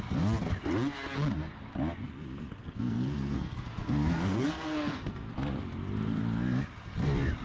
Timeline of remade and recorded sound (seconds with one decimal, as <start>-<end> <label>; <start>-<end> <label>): 0.0-2.6 recorded; 2.6-5.3 remade; 5.3-7.4 recorded